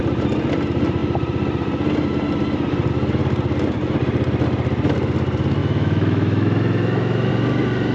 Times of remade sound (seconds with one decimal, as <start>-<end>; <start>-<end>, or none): 5.6-7.3